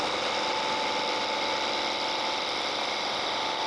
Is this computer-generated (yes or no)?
no